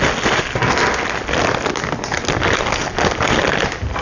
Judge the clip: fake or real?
real